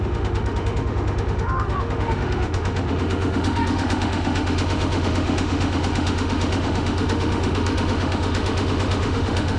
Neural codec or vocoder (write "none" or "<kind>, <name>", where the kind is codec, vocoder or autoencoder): autoencoder, DAC-VAE